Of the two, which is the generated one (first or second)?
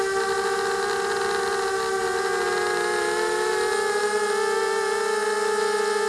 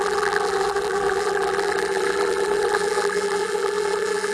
second